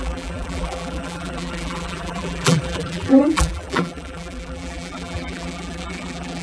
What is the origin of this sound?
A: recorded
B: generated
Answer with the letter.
B